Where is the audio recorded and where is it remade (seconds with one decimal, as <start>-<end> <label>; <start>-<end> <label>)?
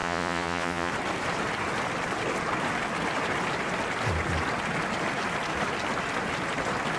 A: 0.0-0.9 remade; 0.9-7.0 recorded